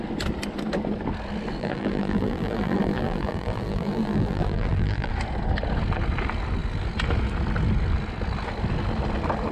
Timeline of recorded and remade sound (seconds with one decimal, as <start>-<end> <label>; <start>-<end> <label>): 0.0-1.6 recorded; 1.6-5.1 remade; 5.1-9.5 recorded